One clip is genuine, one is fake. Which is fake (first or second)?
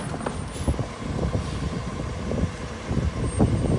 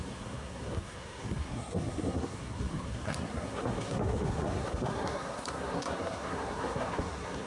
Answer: second